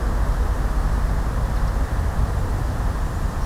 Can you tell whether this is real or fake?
real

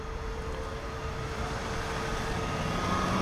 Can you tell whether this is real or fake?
real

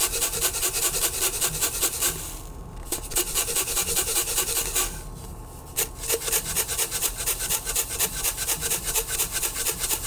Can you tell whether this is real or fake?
real